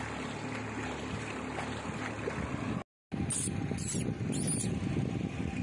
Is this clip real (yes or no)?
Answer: yes